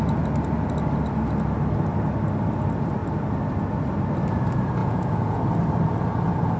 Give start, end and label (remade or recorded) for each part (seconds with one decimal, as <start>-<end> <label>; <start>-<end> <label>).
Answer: 0.0-4.8 recorded; 4.8-5.4 remade; 5.4-6.6 recorded